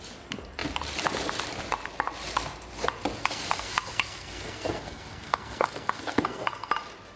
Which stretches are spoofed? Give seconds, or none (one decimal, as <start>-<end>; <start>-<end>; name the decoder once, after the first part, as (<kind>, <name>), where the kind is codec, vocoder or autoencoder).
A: 3.2-6.7 (codec, SNAC)